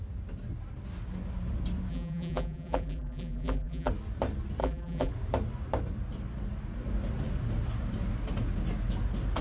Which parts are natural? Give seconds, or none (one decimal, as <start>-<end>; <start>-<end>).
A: 0.0-1.9; 3.9-4.6; 5.1-9.4

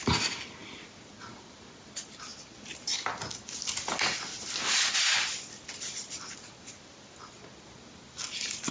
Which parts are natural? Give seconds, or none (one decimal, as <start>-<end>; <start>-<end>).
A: 0.0-8.7

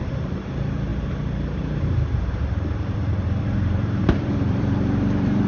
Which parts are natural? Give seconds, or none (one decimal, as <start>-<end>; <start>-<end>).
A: none

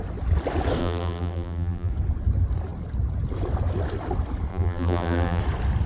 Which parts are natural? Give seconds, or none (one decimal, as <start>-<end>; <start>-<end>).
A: 0.0-0.8; 1.9-4.5; 5.4-5.9